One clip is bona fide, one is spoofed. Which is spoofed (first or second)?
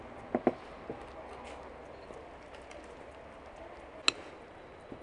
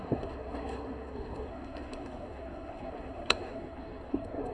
second